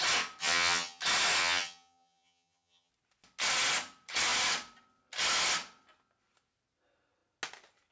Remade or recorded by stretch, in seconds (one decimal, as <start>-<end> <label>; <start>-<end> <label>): 0.0-0.4 recorded; 0.4-1.0 remade; 1.0-1.4 recorded; 1.4-2.9 remade; 2.9-7.9 recorded